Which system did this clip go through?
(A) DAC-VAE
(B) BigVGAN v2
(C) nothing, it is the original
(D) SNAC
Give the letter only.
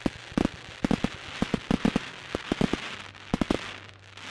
C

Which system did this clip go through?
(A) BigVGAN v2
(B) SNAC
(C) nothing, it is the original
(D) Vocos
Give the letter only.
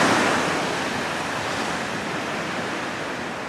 C